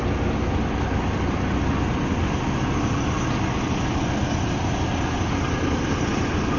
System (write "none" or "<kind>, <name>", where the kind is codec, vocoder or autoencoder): none